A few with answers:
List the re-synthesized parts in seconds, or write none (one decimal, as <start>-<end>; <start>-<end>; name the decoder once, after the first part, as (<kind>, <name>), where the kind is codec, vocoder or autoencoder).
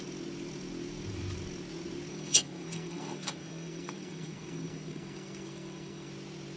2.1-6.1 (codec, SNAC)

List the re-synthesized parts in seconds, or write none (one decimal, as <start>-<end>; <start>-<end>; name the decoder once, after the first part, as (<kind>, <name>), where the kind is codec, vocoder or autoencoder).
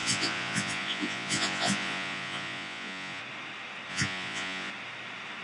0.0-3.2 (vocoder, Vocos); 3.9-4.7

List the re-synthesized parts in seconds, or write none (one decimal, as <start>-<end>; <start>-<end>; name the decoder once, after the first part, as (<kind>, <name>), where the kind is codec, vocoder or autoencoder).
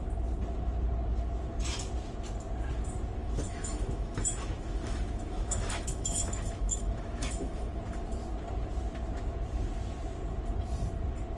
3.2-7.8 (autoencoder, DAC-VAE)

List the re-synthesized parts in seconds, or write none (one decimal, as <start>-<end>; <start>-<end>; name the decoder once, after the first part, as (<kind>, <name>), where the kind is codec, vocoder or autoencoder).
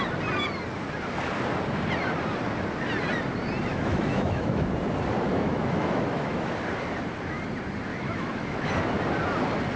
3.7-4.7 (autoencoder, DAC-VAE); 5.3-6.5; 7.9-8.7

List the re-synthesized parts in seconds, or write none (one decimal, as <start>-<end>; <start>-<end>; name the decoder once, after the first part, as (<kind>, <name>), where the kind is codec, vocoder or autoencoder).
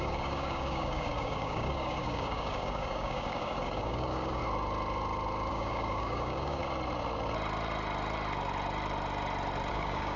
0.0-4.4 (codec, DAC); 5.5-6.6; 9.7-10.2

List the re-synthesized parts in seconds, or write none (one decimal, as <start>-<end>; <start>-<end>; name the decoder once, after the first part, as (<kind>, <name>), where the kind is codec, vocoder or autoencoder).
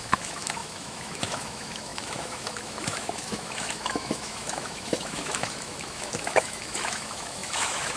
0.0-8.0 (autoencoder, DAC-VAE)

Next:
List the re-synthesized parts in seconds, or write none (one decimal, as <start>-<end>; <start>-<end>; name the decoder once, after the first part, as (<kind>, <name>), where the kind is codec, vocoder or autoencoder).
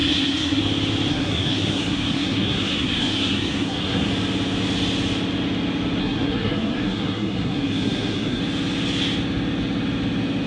0.0-0.6 (codec, SNAC); 1.1-4.1; 6.0-8.4